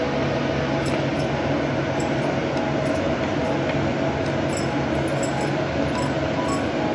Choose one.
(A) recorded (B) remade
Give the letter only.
A